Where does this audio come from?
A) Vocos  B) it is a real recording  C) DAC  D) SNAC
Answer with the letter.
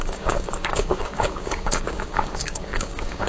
C